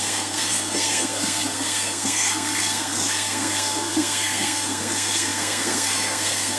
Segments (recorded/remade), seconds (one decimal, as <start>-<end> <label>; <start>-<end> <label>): 0.0-6.6 remade